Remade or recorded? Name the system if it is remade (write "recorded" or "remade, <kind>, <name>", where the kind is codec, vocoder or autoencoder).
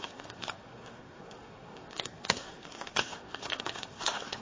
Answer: remade, codec, SNAC